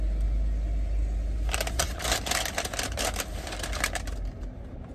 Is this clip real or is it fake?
real